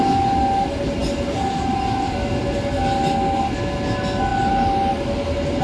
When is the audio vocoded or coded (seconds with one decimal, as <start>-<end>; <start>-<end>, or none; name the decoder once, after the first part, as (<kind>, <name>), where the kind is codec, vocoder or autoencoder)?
none